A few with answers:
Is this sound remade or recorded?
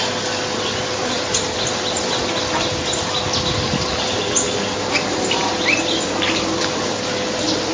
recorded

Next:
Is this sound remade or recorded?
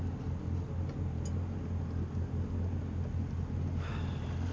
recorded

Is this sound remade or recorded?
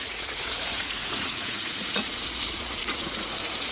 remade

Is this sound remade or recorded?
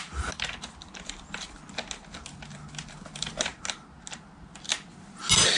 recorded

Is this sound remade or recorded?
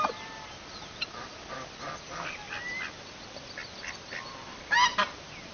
recorded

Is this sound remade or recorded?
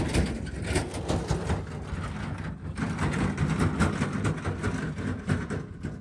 recorded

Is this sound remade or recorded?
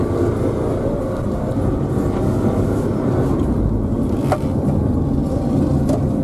recorded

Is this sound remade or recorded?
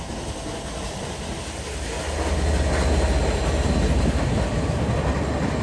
recorded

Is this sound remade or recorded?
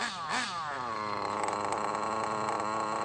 recorded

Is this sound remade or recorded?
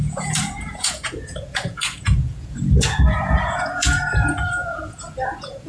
remade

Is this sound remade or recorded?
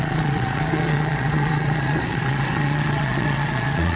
remade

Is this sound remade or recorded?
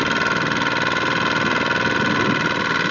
recorded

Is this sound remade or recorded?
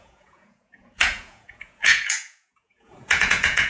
remade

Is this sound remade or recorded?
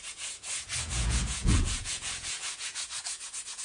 remade